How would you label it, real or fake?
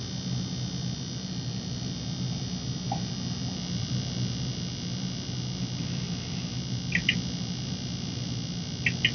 real